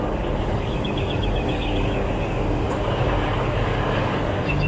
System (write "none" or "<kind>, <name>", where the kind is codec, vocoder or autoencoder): codec, DAC